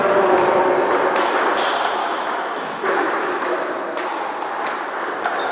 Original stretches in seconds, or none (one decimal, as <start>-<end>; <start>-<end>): 0.0-2.0; 3.7-5.5